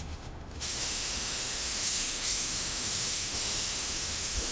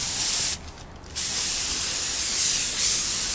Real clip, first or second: second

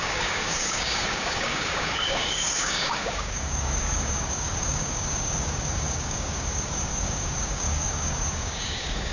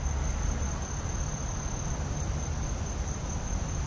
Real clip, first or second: second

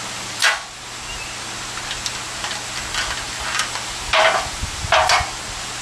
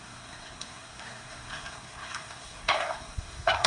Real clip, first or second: first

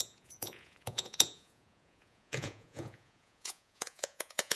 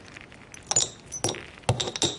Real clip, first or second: second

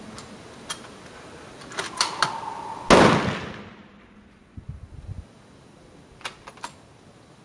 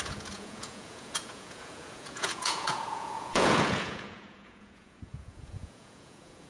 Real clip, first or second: first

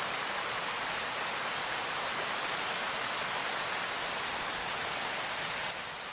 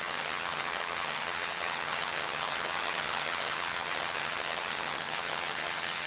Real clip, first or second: first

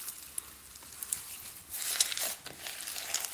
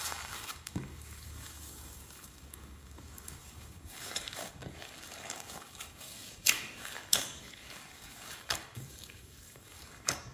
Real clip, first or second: first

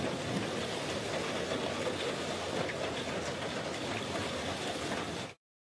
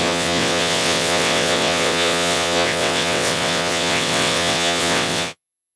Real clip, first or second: first